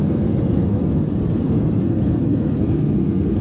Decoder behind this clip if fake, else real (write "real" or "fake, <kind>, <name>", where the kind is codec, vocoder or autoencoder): fake, codec, SNAC